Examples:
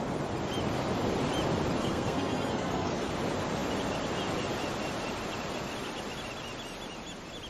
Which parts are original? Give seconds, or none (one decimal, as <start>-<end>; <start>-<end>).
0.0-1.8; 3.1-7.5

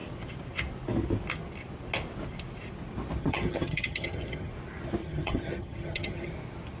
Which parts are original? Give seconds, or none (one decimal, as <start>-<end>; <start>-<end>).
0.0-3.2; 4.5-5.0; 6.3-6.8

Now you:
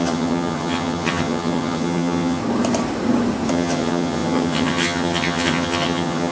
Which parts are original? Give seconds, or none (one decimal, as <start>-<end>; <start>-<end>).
2.4-3.5